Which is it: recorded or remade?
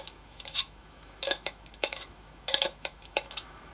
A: remade